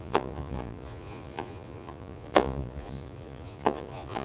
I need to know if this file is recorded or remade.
remade